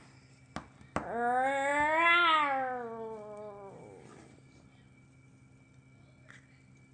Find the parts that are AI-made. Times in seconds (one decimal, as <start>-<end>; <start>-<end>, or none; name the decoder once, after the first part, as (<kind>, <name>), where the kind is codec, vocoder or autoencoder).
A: none